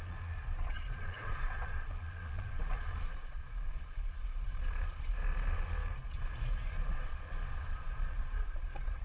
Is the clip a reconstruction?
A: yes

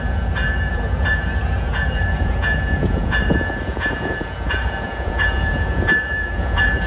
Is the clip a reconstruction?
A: yes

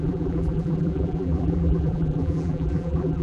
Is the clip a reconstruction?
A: yes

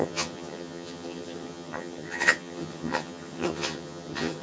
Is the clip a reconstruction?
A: yes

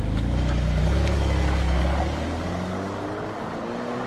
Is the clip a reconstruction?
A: yes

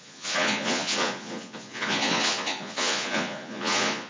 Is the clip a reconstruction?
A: yes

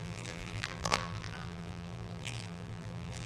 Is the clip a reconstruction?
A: yes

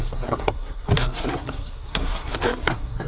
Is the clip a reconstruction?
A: yes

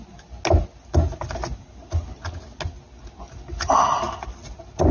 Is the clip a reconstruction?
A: no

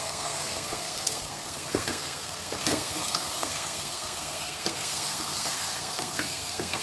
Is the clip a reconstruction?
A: yes